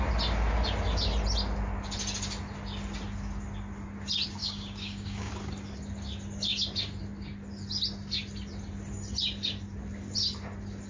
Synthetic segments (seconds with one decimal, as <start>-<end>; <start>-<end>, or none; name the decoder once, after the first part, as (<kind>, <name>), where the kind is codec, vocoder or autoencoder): 4.4-5.3 (codec, DAC)